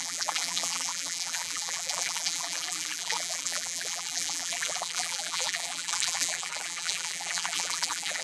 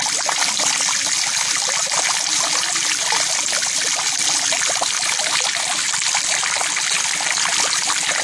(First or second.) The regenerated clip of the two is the first